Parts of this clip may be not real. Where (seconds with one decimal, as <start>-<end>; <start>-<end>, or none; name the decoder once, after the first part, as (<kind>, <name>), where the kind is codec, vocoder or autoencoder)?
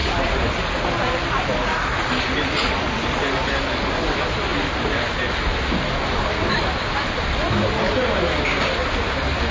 none